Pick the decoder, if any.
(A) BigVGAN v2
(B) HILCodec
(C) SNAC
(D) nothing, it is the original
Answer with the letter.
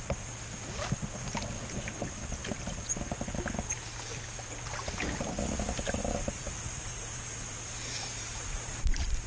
D